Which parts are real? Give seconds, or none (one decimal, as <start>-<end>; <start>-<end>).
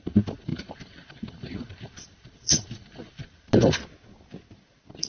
0.0-0.5; 3.5-5.1